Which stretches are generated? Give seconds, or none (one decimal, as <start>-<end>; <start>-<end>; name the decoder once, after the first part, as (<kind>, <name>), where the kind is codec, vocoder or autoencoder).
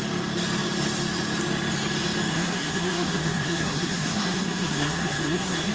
2.3-5.7 (codec, SNAC)